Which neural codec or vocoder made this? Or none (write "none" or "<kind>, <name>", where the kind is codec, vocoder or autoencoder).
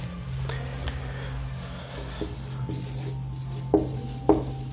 none